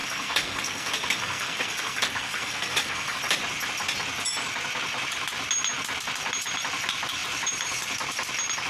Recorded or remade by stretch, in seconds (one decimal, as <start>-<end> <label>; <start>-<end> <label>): 0.0-3.2 remade; 3.2-8.7 recorded